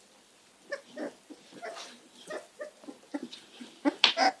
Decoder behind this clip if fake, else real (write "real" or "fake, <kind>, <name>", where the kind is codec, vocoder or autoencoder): real